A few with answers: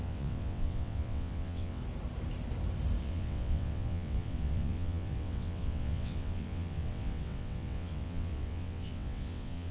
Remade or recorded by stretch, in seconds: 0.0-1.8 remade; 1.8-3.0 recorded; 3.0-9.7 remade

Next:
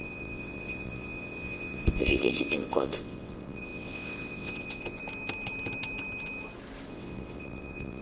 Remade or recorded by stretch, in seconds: 0.0-5.0 remade; 5.0-6.9 recorded; 6.9-8.0 remade